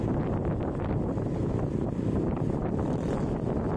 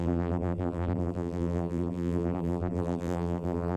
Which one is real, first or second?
first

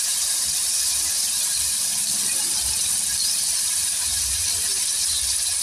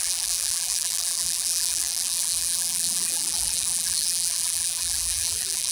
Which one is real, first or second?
first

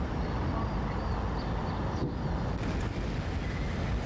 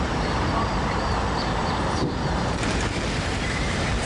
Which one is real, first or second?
first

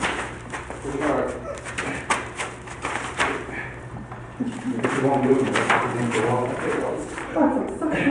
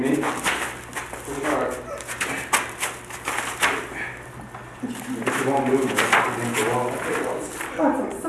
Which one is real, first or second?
second